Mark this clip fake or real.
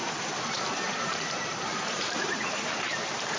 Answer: fake